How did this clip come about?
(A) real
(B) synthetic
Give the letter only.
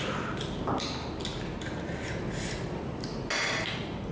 A